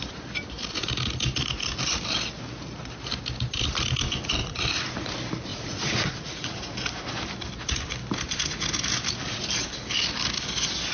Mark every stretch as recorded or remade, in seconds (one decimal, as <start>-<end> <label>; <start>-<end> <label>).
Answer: 0.0-4.4 recorded; 4.4-5.1 remade; 5.1-5.5 recorded; 5.5-6.6 remade; 6.6-10.9 recorded